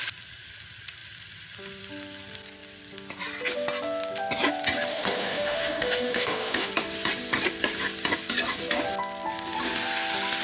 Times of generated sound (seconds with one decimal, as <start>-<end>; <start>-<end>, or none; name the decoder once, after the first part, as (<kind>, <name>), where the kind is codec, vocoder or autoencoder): 4.9-6.7 (autoencoder, DAC-VAE)